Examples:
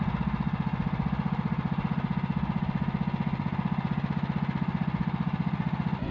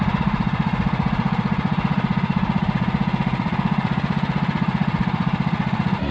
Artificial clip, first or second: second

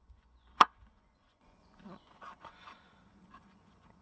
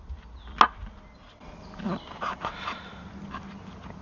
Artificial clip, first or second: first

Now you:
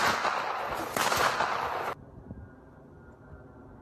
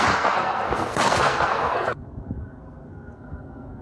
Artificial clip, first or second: second